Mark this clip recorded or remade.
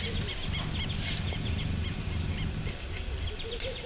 recorded